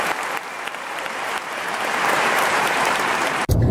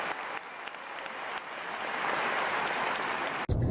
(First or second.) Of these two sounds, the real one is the second